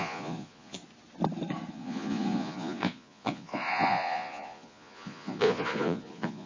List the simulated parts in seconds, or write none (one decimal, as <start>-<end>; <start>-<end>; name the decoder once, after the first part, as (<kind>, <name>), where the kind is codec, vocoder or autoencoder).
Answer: 0.0-0.8 (vocoder, Vocos); 1.7-6.5